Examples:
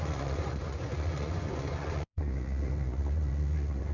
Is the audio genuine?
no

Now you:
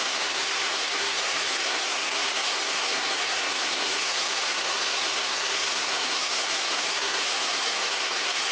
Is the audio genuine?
no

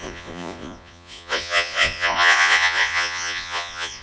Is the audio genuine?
no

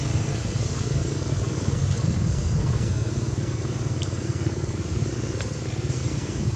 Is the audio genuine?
no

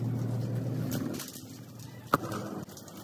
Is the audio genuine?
yes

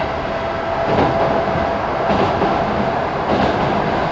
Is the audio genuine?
yes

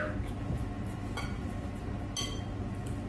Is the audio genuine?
yes